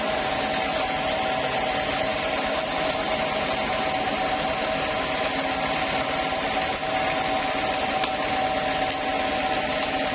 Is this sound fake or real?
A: real